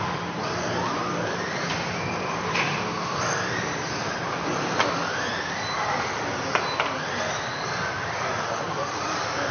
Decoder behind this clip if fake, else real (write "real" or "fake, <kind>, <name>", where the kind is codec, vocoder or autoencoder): fake, vocoder, BigVGAN v2